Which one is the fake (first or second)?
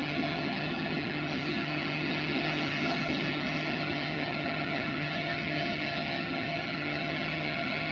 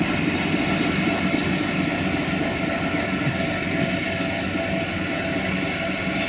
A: first